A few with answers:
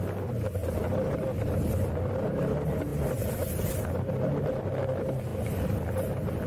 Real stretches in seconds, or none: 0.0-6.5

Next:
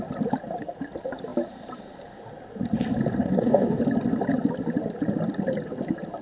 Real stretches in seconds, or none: 0.0-3.2; 3.8-6.2

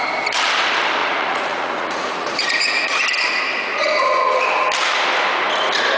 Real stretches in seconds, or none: 0.0-1.0; 3.0-3.7; 4.4-6.0

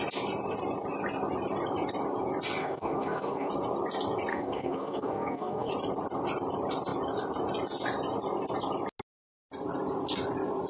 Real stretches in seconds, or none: 0.0-2.6; 3.5-4.3; 5.7-10.7

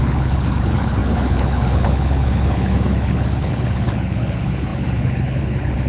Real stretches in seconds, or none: none

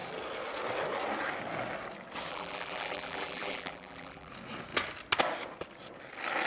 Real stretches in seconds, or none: 0.0-2.3; 4.3-6.5